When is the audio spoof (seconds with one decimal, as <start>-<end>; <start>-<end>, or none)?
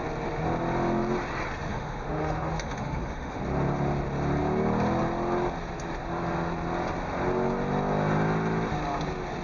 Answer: 1.7-3.4